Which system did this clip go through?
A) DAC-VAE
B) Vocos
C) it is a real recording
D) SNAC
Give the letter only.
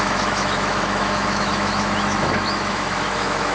A